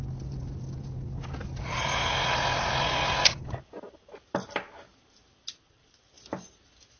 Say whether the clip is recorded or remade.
recorded